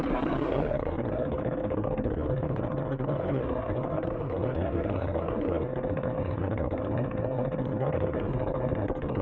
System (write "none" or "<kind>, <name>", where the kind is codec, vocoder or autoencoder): codec, SNAC